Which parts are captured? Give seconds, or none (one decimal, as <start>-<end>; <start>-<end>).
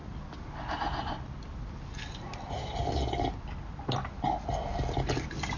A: 0.0-5.6